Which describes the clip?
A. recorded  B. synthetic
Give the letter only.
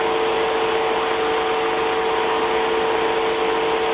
A